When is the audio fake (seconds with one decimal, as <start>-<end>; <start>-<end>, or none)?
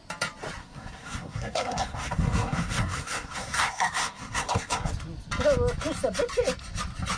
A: 0.6-4.9